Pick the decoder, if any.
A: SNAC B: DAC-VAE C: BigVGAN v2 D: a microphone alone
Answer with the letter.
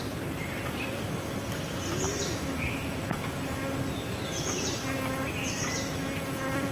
D